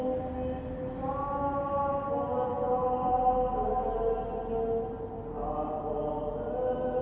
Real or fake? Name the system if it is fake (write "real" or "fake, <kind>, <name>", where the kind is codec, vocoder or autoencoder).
real